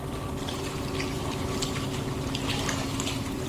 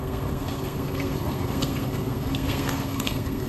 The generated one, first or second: second